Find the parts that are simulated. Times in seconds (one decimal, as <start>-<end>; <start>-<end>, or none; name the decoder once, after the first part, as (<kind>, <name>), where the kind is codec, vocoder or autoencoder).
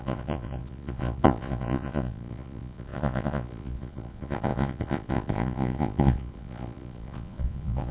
0.0-7.9 (vocoder, Vocos)